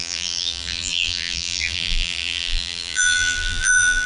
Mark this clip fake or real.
fake